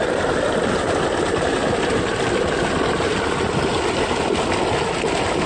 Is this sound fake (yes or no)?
no